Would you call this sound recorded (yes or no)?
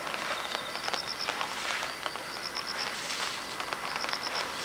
yes